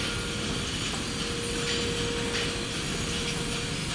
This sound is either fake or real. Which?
real